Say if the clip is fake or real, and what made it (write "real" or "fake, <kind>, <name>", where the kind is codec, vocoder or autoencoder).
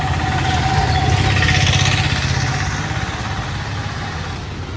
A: real